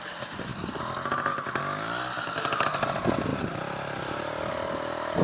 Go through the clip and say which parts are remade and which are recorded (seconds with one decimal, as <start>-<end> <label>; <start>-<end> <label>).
0.0-5.2 recorded